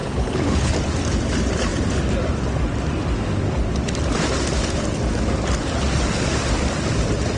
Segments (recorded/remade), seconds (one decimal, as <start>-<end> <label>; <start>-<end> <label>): 0.0-0.7 remade; 0.7-7.4 recorded